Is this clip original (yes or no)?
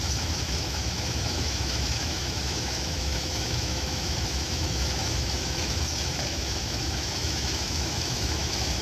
no